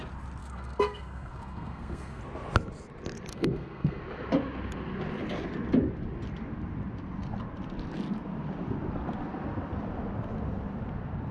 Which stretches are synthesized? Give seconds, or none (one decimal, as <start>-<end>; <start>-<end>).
0.4-2.2; 3.3-4.0